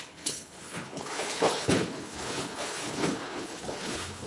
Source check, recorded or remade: remade